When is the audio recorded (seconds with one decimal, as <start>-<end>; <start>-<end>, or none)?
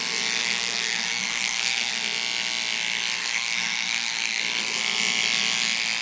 0.0-0.4; 1.9-3.2; 4.4-6.0